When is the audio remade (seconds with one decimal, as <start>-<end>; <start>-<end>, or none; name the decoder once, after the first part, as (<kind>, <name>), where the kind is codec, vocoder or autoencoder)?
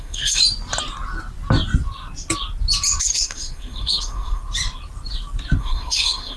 0.0-0.4 (codec, SNAC); 3.0-4.4; 5.6-6.4